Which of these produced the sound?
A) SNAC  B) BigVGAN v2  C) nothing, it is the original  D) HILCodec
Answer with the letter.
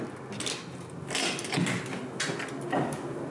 C